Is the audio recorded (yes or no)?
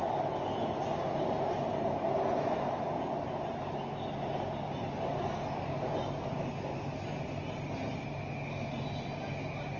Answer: yes